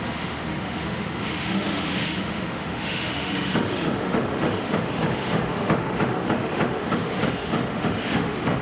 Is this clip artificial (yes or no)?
yes